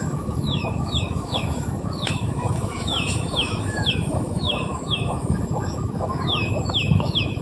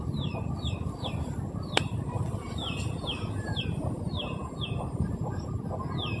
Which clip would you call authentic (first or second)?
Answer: second